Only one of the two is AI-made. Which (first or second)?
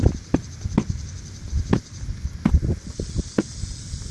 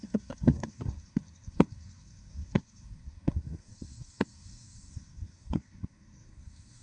second